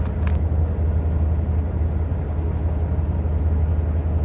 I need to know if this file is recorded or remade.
recorded